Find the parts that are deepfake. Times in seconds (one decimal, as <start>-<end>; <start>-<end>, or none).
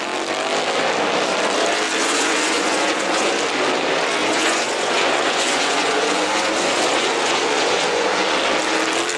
2.0-3.3; 4.2-8.4